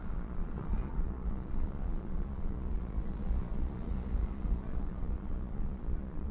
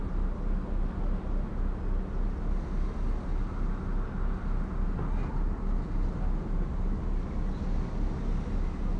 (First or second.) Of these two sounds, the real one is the second